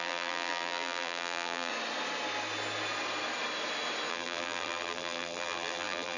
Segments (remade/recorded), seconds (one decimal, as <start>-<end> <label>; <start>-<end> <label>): 0.0-1.7 remade; 1.7-4.1 recorded; 4.1-6.2 remade